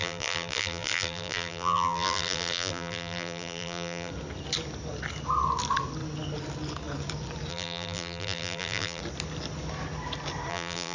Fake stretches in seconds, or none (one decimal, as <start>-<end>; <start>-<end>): 0.0-4.1; 7.5-9.0; 10.5-10.9